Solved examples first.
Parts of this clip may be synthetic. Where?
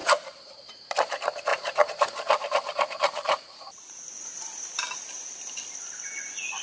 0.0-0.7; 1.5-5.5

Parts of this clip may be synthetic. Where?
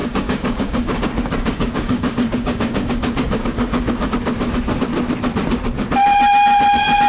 0.0-4.1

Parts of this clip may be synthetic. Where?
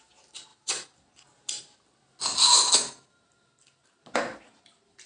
0.5-1.1